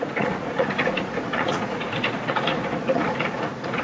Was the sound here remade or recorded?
remade